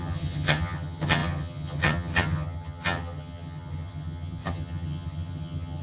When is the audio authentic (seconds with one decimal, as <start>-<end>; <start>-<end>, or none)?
none